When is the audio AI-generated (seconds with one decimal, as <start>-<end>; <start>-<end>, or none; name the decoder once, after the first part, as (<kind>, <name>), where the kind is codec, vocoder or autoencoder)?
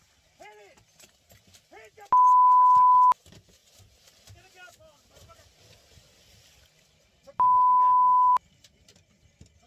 none